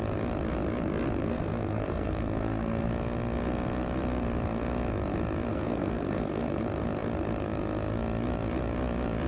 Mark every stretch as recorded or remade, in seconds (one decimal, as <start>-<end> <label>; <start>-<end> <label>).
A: 0.0-1.2 recorded; 1.2-2.9 remade; 2.9-5.5 recorded; 5.5-6.6 remade; 6.6-9.3 recorded